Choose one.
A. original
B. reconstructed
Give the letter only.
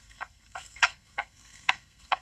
B